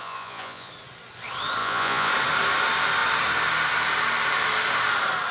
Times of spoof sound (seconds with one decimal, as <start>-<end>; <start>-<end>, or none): 0.0-0.7; 1.6-2.1